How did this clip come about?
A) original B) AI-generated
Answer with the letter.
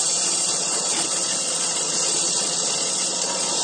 B